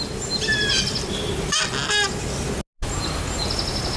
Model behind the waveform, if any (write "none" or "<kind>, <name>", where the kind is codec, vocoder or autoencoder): none